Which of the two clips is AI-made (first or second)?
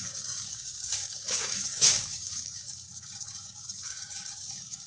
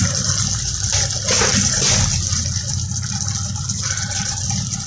first